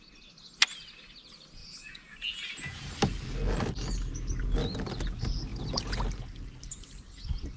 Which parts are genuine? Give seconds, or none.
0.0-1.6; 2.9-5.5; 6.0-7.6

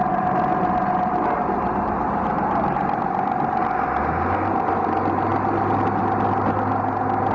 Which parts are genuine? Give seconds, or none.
0.0-7.3

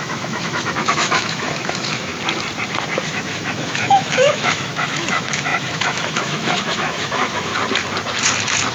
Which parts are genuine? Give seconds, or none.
2.1-3.1; 7.5-8.7

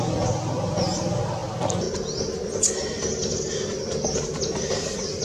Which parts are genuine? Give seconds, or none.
0.0-5.2